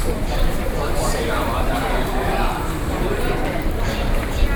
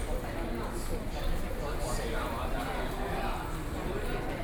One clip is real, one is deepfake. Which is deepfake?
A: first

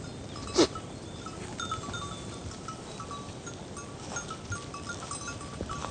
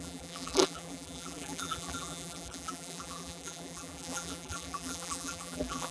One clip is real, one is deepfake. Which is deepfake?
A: second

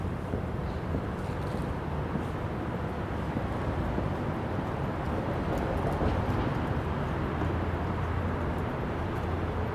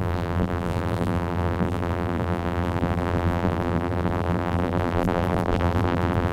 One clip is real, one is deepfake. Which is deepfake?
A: second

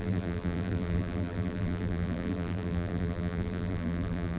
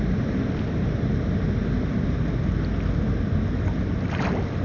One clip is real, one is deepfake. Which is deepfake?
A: first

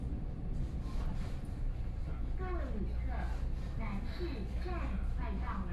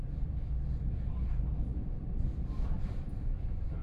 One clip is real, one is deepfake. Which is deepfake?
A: second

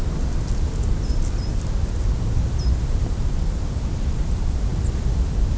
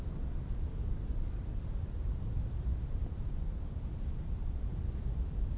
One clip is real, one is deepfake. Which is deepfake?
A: second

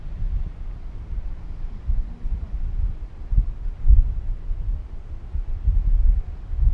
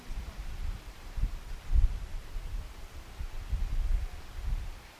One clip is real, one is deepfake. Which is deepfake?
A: second